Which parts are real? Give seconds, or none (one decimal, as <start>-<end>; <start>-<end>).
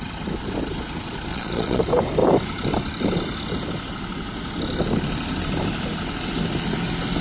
0.0-1.3; 1.8-7.2